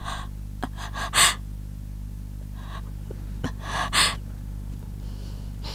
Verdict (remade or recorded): recorded